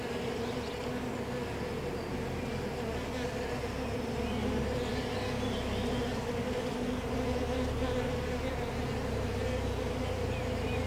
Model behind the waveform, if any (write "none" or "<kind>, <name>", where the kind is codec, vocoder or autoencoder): none